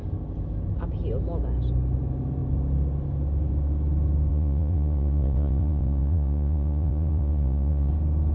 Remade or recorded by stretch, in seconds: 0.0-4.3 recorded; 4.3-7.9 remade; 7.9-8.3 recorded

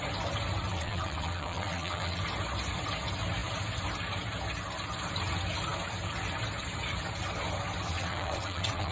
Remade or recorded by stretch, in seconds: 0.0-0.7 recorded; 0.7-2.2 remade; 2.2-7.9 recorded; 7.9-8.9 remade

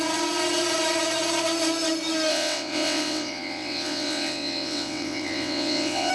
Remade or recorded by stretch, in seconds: 0.0-2.3 recorded; 2.3-6.1 remade

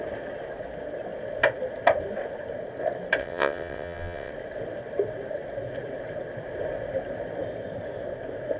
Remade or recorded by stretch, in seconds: 0.0-3.2 recorded; 3.2-4.3 remade; 4.3-8.6 recorded

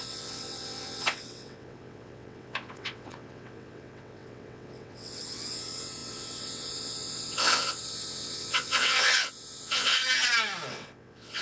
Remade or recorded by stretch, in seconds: 0.0-10.0 remade; 10.0-10.7 recorded; 10.7-11.4 remade

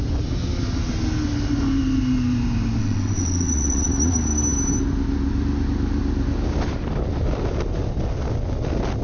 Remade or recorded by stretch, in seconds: 0.0-2.8 recorded; 2.8-3.9 remade; 3.9-9.0 recorded

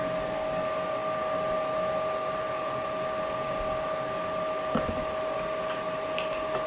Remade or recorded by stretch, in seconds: 0.0-6.7 recorded